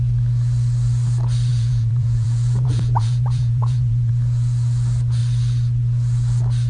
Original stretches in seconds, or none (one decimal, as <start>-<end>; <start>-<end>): 0.0-1.5; 4.1-6.7